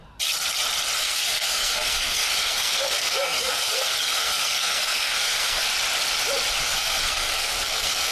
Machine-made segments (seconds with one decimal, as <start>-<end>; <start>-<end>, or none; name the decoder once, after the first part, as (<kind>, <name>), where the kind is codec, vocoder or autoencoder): 1.0-5.6 (codec, SNAC); 6.6-8.1